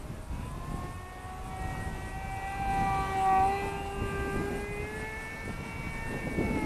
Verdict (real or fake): real